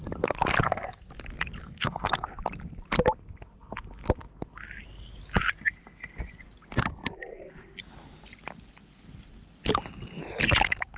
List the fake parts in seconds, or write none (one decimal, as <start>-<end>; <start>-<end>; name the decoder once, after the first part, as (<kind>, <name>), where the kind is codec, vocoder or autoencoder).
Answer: 1.6-2.1 (codec, SNAC)